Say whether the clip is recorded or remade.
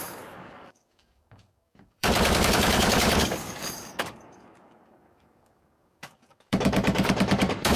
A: remade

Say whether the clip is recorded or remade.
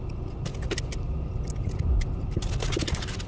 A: recorded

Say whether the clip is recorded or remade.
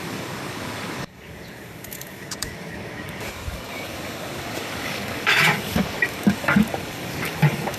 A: remade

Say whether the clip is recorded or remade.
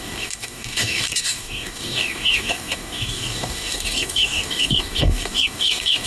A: remade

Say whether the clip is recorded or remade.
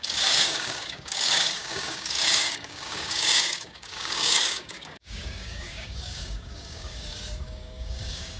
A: remade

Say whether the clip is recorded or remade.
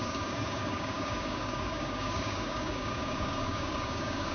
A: remade